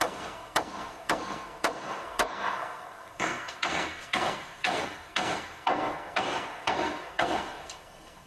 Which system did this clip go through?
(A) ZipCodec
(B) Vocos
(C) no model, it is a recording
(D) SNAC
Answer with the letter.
D